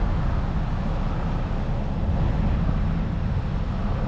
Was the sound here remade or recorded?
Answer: recorded